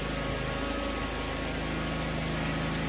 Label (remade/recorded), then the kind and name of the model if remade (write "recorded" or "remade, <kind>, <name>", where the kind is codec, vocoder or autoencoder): recorded